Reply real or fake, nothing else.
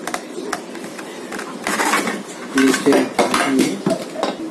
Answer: real